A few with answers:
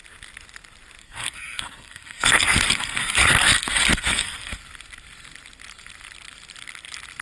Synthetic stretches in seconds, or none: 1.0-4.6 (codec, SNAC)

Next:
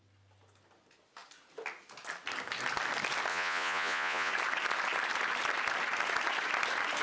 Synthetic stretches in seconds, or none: 3.3-4.3 (vocoder, Vocos)